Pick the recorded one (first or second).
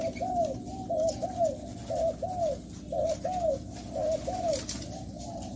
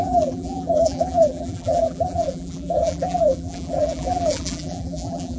first